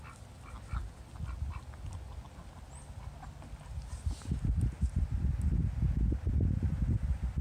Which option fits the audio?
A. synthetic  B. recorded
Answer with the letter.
B